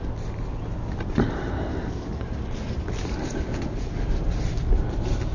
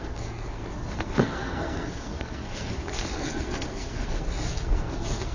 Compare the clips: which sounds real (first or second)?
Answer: first